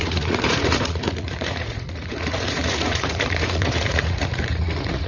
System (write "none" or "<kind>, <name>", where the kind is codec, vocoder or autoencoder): vocoder, Vocos